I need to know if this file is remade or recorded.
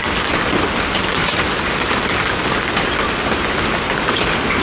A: recorded